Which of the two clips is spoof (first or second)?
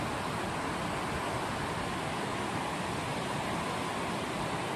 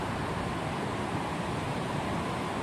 second